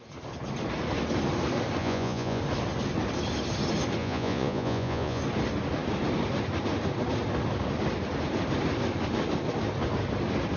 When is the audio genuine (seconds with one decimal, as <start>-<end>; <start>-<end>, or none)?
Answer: 0.0-1.8; 2.4-4.0; 5.2-10.6